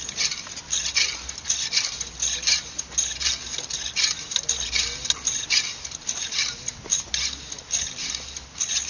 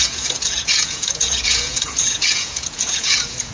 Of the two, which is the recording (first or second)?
first